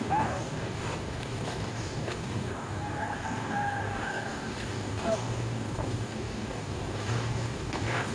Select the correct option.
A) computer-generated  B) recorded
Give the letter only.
A